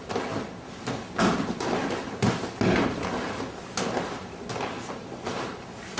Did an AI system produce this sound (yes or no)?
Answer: no